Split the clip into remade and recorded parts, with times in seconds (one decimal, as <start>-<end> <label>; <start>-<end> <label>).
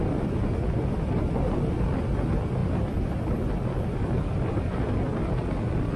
0.0-6.0 recorded